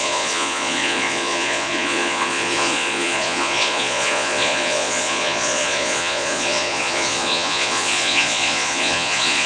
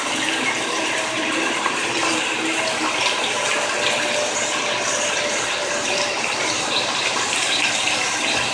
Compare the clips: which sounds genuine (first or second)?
second